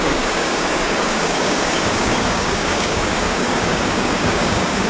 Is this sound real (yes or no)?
no